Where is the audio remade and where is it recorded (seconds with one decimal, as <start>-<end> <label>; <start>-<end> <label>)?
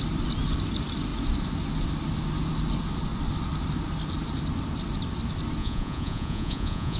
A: 0.0-5.6 recorded; 5.6-7.0 remade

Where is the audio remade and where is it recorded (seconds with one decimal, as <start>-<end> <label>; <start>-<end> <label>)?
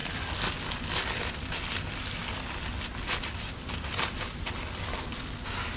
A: 0.0-5.8 recorded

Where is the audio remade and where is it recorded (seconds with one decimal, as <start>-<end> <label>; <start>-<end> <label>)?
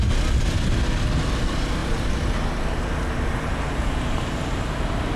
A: 0.0-5.2 recorded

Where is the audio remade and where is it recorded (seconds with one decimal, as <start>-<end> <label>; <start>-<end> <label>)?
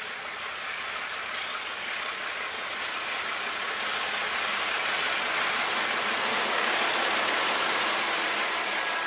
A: 0.0-6.3 recorded; 6.3-6.8 remade; 6.8-9.1 recorded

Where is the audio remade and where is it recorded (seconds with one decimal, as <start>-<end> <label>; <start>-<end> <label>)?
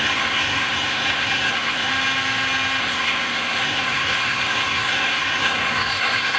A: 0.0-1.9 remade; 1.9-2.8 recorded; 2.8-6.4 remade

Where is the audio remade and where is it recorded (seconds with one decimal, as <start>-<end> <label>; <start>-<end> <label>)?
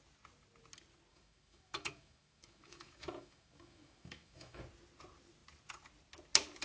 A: 0.0-1.1 recorded; 1.1-4.6 remade; 4.6-6.6 recorded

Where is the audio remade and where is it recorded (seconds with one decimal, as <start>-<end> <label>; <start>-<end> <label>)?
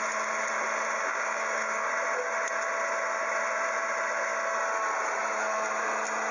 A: 0.0-1.0 recorded; 1.0-1.9 remade; 1.9-6.3 recorded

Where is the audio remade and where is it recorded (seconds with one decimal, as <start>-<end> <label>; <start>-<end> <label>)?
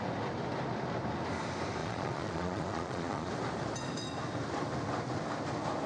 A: 0.0-1.8 recorded; 1.8-3.3 remade; 3.3-5.9 recorded